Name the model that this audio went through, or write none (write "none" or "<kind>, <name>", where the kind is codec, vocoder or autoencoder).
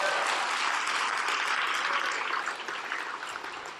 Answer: none